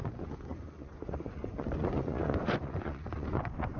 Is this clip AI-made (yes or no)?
yes